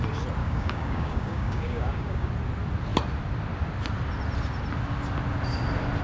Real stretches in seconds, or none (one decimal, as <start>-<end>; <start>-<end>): 0.0-0.4; 2.3-6.0